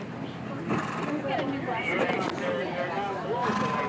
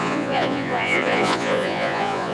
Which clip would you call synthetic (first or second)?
second